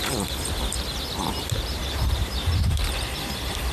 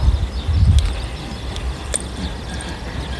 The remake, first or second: first